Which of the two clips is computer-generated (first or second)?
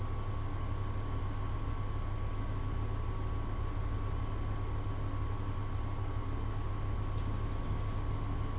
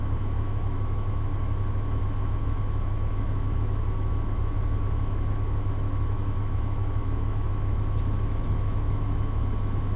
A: second